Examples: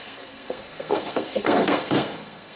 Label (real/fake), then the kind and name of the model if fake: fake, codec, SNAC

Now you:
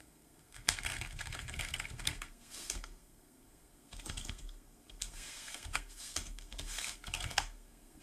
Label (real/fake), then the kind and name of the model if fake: fake, codec, SNAC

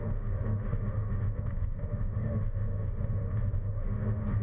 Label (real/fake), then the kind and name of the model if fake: fake, autoencoder, DAC-VAE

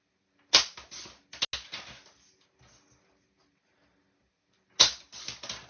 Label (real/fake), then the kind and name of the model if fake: real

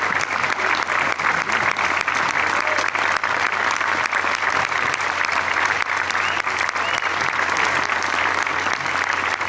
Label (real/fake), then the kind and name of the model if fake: real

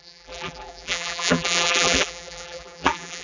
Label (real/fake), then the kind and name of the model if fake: fake, vocoder, BigVGAN v2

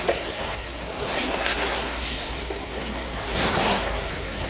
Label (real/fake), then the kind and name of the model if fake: fake, codec, SNAC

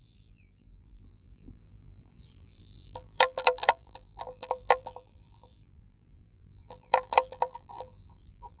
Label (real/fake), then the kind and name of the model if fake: fake, vocoder, BigVGAN v2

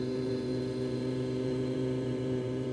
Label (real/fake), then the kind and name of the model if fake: fake, vocoder, BigVGAN v2